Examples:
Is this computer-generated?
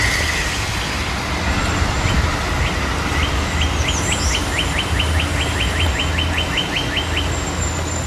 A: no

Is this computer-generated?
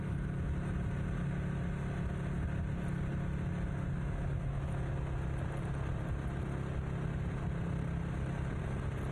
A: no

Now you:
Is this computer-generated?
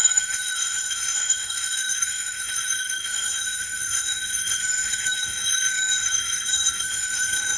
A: yes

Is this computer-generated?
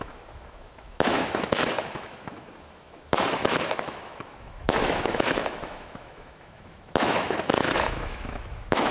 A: yes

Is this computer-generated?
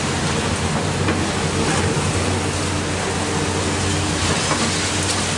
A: no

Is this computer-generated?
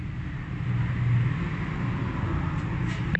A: no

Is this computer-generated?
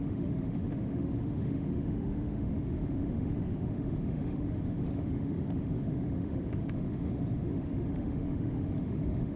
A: yes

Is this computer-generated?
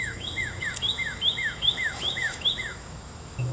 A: yes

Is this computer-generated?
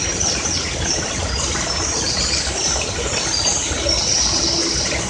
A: no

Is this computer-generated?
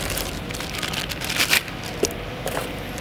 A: no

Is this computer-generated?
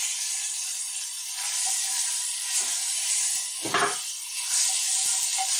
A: no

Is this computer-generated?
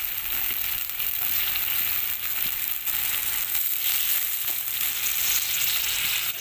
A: no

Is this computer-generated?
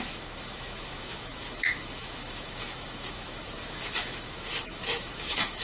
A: yes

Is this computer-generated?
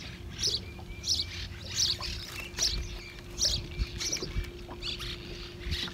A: no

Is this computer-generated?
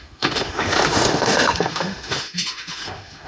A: yes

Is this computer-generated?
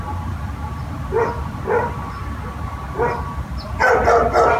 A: no